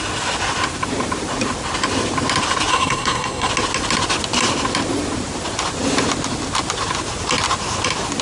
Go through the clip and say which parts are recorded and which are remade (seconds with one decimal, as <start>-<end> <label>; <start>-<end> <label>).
0.0-2.7 recorded; 2.7-3.5 remade; 3.5-8.2 recorded